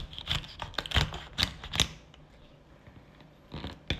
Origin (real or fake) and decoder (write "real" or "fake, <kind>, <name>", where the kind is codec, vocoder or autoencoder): real